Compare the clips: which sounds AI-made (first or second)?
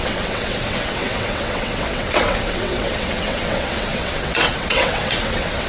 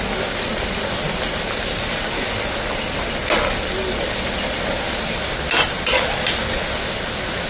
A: first